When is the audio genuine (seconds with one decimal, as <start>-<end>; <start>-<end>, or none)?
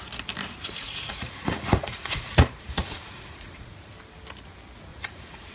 0.0-0.6; 3.9-4.9